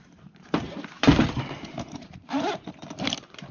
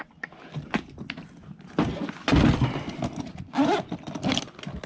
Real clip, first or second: second